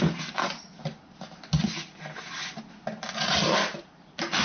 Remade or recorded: recorded